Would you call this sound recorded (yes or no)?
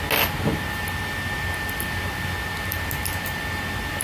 yes